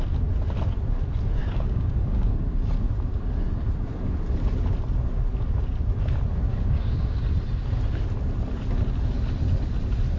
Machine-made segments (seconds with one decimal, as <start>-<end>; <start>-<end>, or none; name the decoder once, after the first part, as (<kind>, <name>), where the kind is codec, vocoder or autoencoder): 1.4-2.4 (codec, DAC); 6.5-7.2